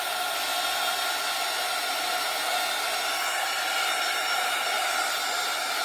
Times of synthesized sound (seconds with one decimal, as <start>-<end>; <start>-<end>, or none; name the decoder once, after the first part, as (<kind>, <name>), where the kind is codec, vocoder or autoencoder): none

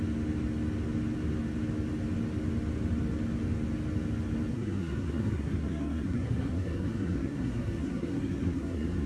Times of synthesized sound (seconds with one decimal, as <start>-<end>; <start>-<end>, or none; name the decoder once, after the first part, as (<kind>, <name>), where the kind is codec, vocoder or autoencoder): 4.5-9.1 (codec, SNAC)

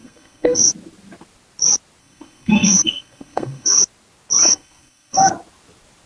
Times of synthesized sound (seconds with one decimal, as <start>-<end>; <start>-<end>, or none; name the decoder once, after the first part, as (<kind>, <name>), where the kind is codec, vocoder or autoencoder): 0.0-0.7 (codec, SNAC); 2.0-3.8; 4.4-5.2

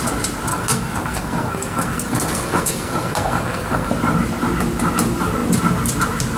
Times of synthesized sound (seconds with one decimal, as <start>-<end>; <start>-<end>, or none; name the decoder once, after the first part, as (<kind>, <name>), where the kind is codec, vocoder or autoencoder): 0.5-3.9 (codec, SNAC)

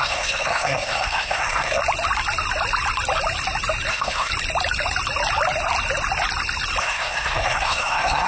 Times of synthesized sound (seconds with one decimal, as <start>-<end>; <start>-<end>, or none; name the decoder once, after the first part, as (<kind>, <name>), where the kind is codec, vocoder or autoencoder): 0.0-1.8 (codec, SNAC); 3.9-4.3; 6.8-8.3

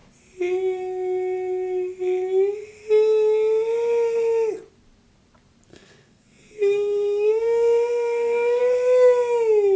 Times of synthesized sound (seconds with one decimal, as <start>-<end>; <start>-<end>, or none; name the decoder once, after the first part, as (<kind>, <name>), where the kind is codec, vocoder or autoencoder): 5.7-8.6 (codec, SNAC)

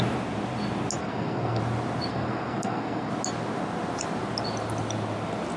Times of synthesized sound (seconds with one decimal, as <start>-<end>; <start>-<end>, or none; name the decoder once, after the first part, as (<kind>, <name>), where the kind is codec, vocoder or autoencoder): 1.0-1.6 (codec, SNAC); 2.1-3.1

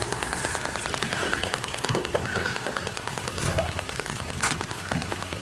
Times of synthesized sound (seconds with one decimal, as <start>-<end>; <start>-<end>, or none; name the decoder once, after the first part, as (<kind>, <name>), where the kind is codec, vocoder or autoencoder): 0.0-0.4 (codec, SNAC); 1.0-5.4